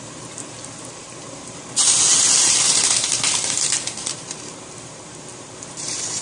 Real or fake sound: fake